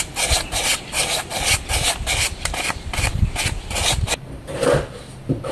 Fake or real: real